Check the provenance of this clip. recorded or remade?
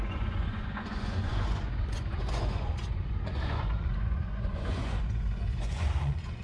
remade